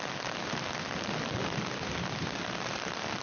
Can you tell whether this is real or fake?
real